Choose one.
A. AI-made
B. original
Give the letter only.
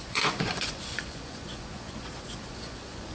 A